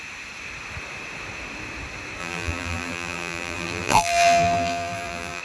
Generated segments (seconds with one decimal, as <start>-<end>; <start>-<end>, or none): 2.2-5.4